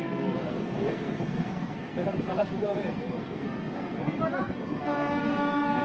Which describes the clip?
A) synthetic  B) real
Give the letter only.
A